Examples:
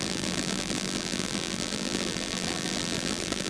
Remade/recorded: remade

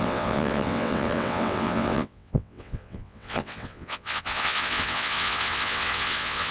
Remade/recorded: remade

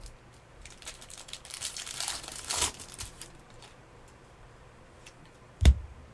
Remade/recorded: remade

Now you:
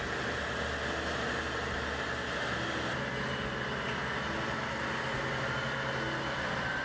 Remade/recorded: recorded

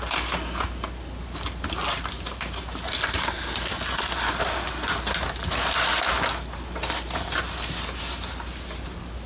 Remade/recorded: recorded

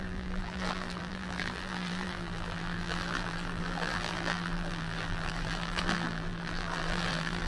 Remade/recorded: remade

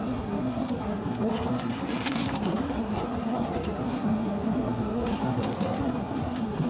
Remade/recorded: remade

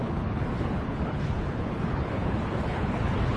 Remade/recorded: remade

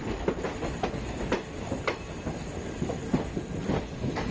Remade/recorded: recorded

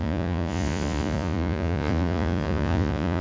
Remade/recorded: remade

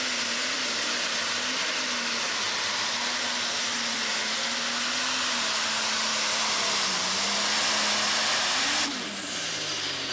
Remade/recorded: recorded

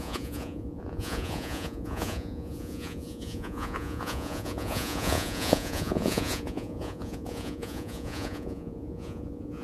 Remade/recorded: remade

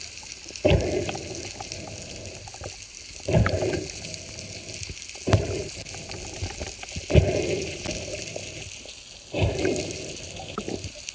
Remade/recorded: recorded